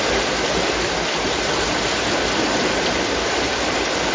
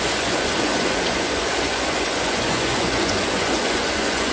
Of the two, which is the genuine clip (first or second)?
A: first